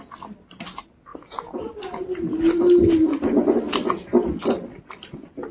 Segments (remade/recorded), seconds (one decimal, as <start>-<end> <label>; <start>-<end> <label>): 0.0-5.5 recorded